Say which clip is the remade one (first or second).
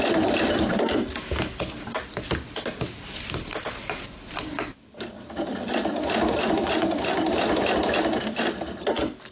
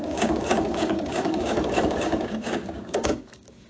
second